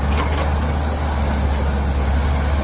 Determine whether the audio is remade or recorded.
recorded